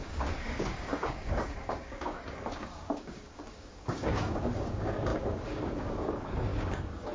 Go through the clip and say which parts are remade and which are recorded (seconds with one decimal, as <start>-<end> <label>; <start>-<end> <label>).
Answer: 0.0-7.1 remade